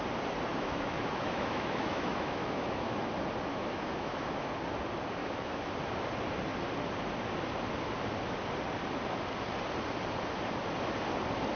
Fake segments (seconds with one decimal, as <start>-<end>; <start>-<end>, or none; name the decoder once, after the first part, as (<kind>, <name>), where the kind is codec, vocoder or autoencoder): 0.5-3.1 (autoencoder, DAC-VAE); 3.5-4.5; 5.2-5.7